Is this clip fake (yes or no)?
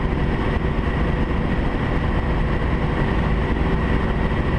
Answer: no